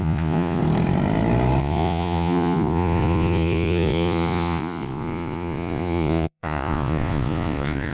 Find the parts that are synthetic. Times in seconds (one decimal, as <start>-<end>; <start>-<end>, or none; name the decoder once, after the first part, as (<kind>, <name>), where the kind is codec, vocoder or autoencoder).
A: 0.0-0.6 (vocoder, Vocos); 1.6-7.9